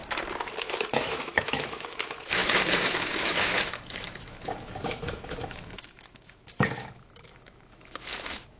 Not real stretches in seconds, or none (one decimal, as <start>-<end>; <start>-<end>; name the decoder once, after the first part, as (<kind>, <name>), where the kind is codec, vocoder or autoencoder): 0.6-8.6 (autoencoder, DAC-VAE)